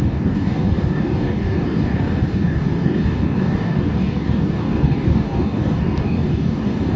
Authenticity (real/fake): fake